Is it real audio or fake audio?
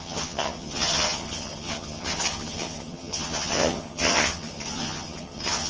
fake